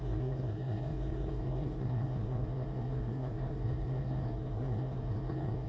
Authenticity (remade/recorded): remade